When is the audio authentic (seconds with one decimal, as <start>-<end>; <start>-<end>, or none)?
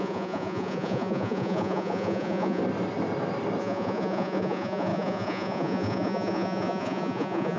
2.6-3.6